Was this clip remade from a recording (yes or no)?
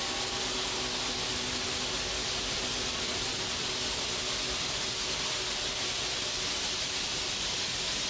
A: no